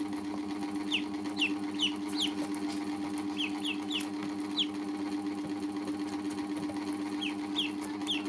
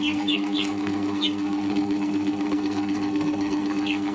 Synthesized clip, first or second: second